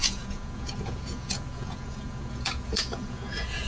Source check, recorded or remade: remade